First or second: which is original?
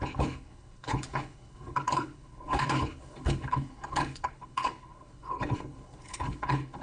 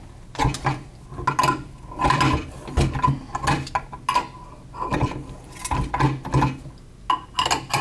second